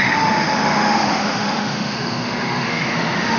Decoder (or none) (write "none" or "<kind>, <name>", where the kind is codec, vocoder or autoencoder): autoencoder, DAC-VAE